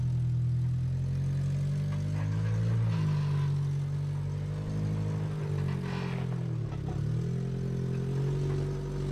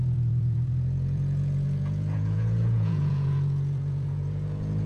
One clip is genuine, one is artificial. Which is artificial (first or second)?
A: second